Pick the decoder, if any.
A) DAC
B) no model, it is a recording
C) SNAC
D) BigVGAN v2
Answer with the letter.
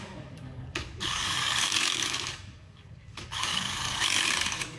A